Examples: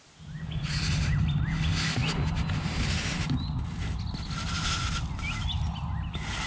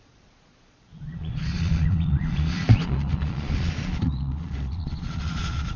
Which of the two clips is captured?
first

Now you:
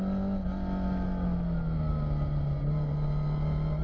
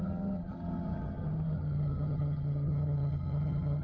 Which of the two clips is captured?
first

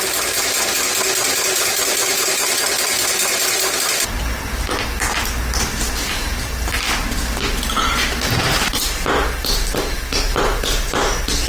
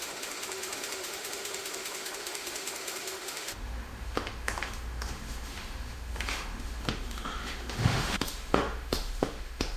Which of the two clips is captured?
first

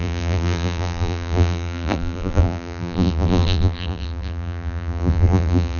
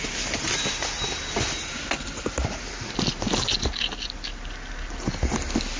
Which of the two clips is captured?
second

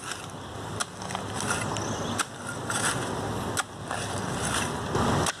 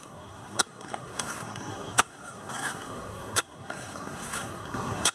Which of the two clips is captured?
first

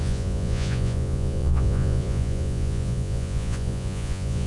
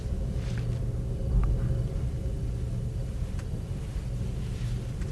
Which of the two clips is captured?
second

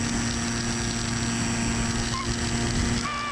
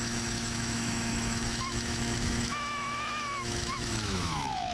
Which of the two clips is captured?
first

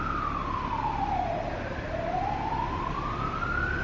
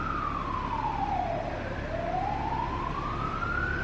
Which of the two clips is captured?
second